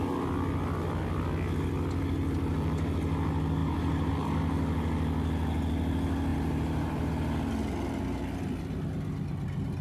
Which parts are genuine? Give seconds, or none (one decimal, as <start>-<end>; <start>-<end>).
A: 0.0-3.6; 4.1-6.3; 7.1-9.8